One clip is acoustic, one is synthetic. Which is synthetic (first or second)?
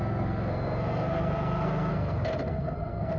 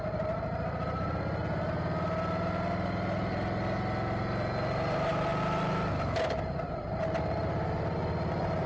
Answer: first